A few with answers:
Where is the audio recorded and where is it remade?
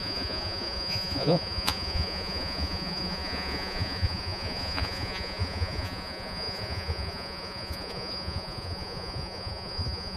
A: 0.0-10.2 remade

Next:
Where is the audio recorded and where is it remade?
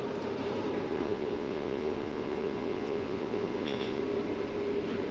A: 0.0-0.9 recorded; 0.9-4.0 remade; 4.0-5.1 recorded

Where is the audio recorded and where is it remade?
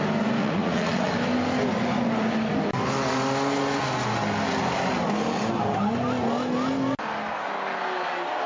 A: 0.0-0.4 recorded; 0.4-1.1 remade; 1.1-8.5 recorded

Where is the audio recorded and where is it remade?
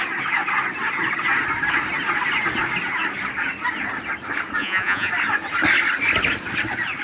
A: 0.0-4.6 recorded; 4.6-5.1 remade; 5.1-7.0 recorded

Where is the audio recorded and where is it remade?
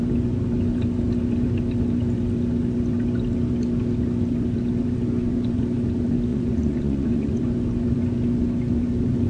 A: 0.0-6.3 recorded; 6.3-7.4 remade; 7.4-9.3 recorded